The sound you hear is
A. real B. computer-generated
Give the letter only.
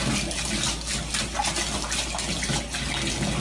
A